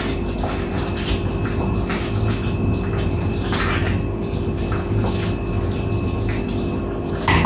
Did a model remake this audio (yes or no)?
no